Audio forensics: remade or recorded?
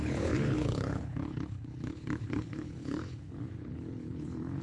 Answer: remade